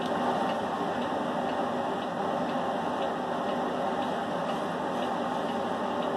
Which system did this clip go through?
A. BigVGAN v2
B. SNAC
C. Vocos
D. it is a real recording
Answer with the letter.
D